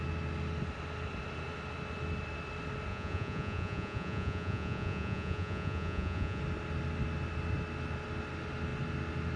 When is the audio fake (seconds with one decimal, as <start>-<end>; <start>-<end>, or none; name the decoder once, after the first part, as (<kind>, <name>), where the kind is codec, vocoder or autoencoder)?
2.9-6.4 (vocoder, Vocos)